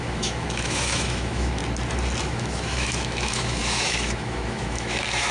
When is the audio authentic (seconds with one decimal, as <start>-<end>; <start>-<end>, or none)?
1.6-2.2